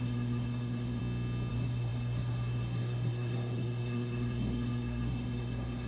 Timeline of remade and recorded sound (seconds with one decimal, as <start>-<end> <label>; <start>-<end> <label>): 0.0-1.0 remade; 1.0-1.5 recorded; 1.5-5.9 remade